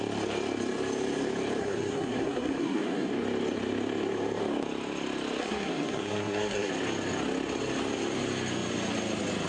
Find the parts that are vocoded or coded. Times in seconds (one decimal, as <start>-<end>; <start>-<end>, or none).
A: 1.6-3.1; 5.4-6.7